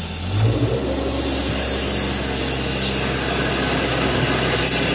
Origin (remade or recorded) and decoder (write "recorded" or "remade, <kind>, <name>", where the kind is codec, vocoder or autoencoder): recorded